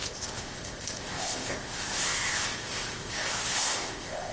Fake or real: fake